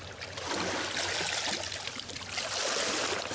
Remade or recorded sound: recorded